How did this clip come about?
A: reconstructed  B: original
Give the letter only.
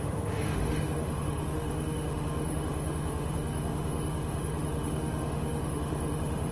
A